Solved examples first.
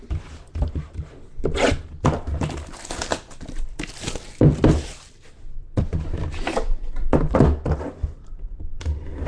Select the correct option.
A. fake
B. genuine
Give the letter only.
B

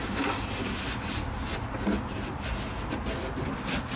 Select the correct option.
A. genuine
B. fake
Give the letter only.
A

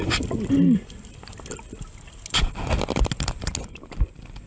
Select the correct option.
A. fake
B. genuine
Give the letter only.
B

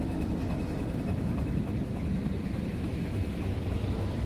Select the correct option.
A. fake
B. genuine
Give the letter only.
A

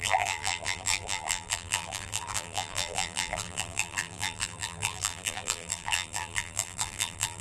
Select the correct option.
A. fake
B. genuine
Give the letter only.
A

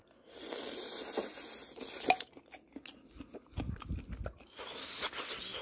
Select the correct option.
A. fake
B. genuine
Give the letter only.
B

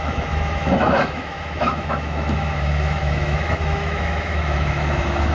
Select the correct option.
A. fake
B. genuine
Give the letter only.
A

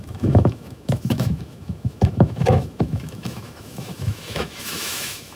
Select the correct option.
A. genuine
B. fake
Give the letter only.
B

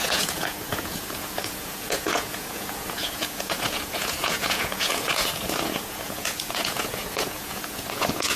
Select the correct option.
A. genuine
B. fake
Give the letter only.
B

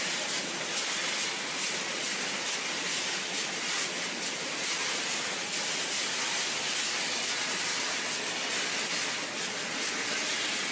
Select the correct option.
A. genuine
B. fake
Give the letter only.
A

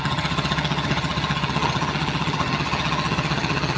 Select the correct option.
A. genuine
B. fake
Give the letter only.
B